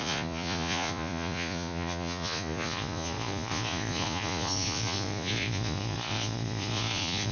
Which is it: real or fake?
fake